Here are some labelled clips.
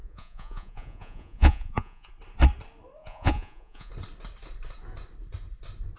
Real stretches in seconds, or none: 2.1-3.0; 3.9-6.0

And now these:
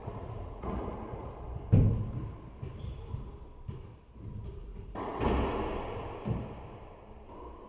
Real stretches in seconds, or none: 1.3-4.6; 5.2-7.7

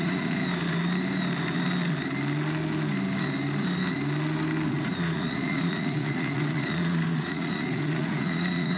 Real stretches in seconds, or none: 0.4-4.7

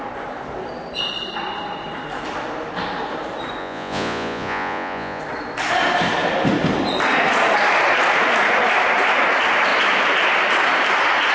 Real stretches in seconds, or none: 0.0-3.6; 5.2-11.3

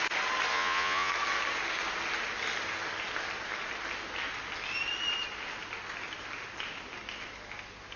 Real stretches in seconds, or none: 0.0-0.5; 1.1-8.0

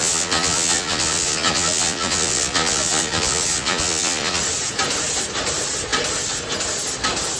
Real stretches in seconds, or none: 4.4-7.4